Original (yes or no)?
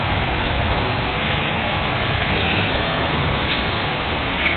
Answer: no